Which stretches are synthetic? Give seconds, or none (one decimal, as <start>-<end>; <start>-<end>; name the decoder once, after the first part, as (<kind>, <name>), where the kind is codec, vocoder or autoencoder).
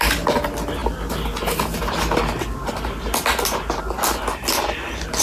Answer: none